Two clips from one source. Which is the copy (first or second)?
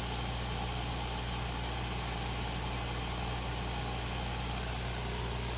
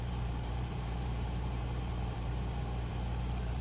second